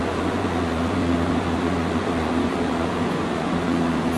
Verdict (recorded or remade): remade